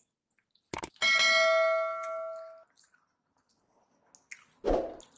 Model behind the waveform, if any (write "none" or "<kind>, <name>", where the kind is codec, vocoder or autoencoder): none